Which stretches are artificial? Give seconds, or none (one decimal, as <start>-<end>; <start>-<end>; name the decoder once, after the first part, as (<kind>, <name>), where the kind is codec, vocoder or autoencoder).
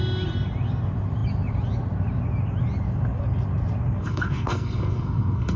4.0-5.6 (codec, SNAC)